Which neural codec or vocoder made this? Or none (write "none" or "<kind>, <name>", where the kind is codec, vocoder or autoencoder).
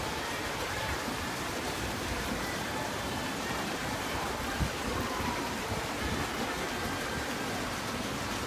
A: vocoder, BigVGAN v2